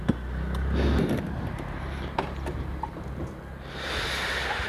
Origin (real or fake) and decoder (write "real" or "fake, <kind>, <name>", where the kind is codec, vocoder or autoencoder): real